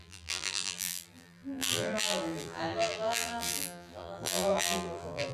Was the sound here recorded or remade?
remade